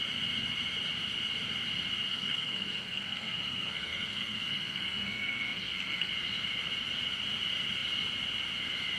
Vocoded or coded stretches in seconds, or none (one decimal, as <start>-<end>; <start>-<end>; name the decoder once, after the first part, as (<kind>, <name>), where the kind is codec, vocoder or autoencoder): 2.1-6.1 (codec, SNAC)